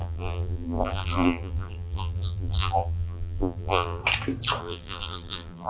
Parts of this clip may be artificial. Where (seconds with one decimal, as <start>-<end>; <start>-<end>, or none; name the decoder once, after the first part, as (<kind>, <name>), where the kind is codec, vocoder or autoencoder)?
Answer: 0.0-4.0 (vocoder, BigVGAN v2); 4.6-5.7